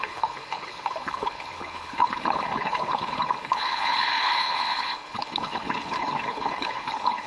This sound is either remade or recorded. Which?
remade